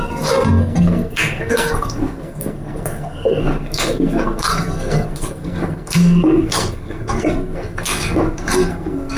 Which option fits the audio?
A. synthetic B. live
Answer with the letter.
A